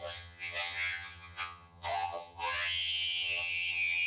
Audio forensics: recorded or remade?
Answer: remade